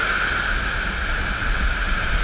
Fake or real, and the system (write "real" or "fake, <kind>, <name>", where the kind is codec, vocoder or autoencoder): real